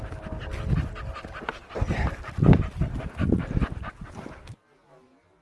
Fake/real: real